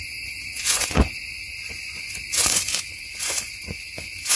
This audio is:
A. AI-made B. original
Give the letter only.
A